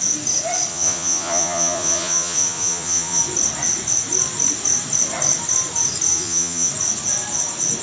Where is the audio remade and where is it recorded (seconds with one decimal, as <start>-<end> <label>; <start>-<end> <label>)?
0.0-0.7 recorded; 0.7-3.2 remade; 3.2-6.1 recorded; 6.1-6.7 remade; 6.7-7.8 recorded